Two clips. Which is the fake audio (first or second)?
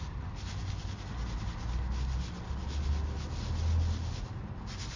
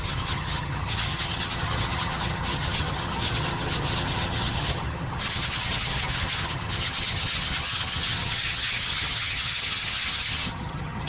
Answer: second